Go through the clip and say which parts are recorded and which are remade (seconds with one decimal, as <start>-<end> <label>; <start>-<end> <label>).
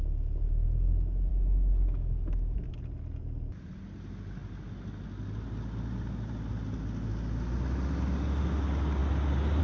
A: 0.0-1.3 recorded; 1.3-2.7 remade; 2.7-9.6 recorded